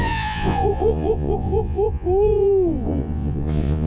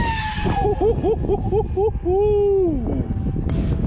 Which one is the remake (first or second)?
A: first